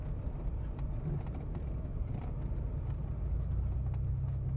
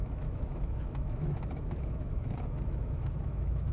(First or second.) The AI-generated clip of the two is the second